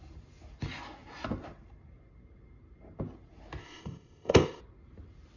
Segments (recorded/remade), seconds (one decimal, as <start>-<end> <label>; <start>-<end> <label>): 0.0-3.6 recorded; 3.6-4.6 remade; 4.6-5.4 recorded